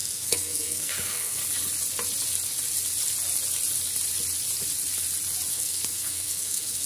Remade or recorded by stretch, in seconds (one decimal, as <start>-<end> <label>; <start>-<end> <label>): 0.0-1.4 remade; 1.4-5.5 recorded; 5.5-6.9 remade